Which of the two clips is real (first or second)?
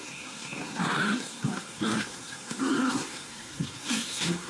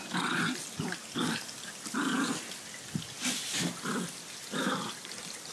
second